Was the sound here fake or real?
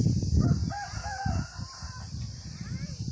real